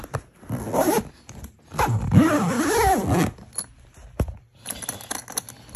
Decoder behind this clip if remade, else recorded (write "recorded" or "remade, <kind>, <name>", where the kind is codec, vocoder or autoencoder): recorded